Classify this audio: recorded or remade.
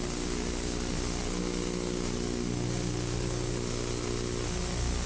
recorded